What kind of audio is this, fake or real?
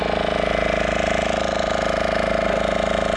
real